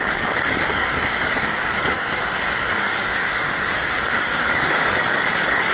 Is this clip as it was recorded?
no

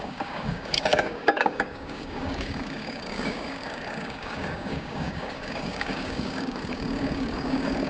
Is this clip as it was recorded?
no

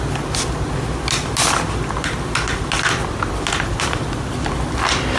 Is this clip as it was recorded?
yes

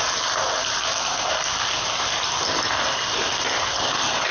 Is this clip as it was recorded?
yes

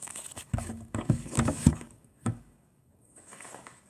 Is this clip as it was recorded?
no